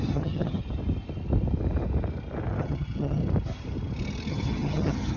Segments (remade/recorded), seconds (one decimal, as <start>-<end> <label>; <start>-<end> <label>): 0.0-0.6 remade; 0.6-2.6 recorded; 2.6-3.2 remade; 3.2-4.3 recorded; 4.3-5.2 remade